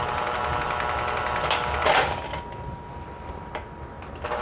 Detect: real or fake real